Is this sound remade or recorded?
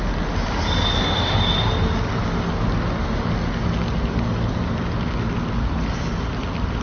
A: recorded